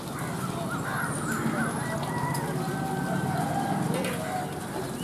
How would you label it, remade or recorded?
recorded